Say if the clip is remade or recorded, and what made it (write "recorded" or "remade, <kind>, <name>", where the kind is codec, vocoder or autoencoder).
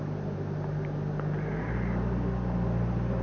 recorded